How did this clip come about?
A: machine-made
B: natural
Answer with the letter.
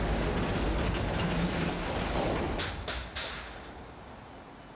B